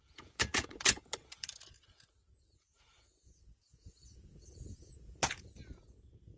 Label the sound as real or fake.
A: fake